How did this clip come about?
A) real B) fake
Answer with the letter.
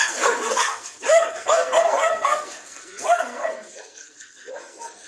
B